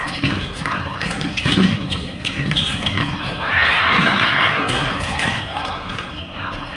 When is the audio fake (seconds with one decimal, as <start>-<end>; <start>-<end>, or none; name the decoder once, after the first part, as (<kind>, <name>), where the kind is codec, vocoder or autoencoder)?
0.0-6.8 (codec, SNAC)